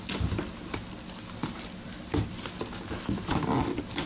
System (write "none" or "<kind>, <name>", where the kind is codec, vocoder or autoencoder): none